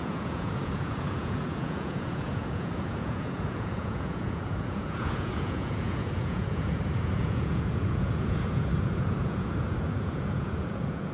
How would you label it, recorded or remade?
remade